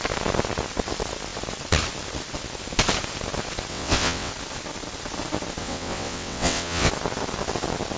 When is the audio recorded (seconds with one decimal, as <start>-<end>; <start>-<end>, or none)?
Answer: 0.0-3.7; 4.3-5.6; 6.9-8.0